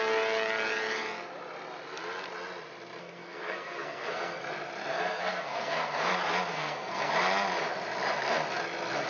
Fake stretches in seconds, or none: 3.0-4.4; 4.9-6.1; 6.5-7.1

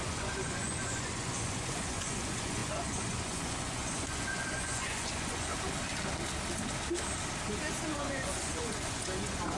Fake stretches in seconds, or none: 0.0-5.5; 7.8-9.6